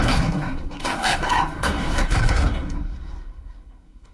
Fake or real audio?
fake